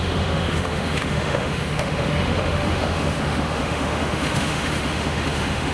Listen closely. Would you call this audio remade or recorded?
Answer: remade